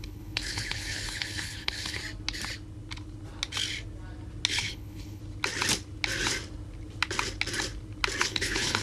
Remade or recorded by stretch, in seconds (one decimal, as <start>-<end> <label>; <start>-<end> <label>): 0.0-2.0 remade; 2.0-4.5 recorded; 4.5-5.2 remade; 5.2-8.2 recorded; 8.2-8.8 remade